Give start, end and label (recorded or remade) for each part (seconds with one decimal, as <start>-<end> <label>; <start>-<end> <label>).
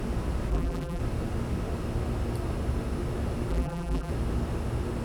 0.0-0.5 recorded; 0.5-1.0 remade; 1.0-3.5 recorded; 3.5-4.1 remade; 4.1-5.0 recorded